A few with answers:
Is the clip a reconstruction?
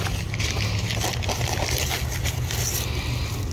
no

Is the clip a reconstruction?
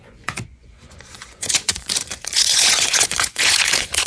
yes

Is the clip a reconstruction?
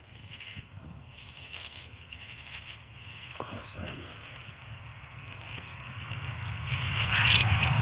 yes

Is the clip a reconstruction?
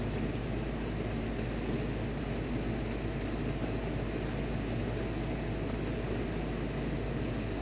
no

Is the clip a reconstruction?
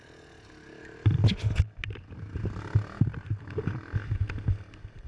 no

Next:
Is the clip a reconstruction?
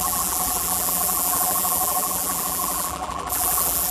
yes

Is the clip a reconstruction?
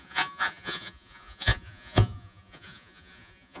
yes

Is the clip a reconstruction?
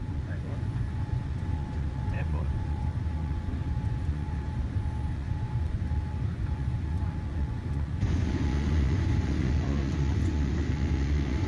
yes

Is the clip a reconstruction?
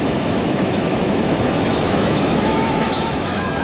yes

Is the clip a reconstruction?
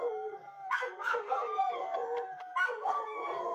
yes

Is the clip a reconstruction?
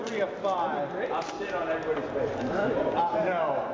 no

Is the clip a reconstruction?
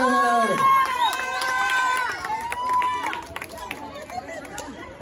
yes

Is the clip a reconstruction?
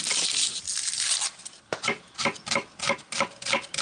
no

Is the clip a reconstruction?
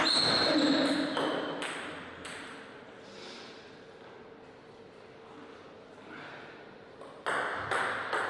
no